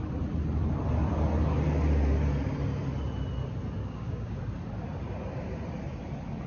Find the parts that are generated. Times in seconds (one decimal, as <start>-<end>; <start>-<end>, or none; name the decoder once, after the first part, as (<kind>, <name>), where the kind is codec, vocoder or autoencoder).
3.8-4.4 (codec, DAC)